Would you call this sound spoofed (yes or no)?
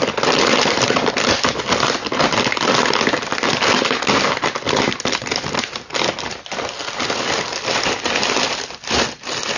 no